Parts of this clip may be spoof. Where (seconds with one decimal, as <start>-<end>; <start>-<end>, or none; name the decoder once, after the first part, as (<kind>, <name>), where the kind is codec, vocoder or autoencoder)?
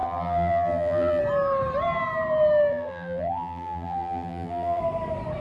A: 0.0-1.2 (vocoder, BigVGAN v2); 2.7-4.8